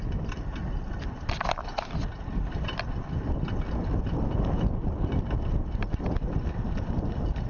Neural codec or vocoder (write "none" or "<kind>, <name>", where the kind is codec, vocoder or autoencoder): vocoder, BigVGAN v2